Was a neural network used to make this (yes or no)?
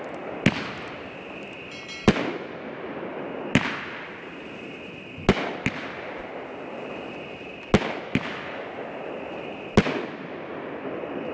no